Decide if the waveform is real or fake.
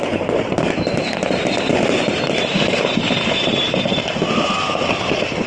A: fake